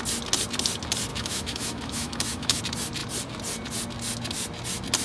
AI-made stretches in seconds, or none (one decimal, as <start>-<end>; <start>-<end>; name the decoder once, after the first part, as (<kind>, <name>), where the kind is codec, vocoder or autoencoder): 1.1-2.6 (autoencoder, DAC-VAE)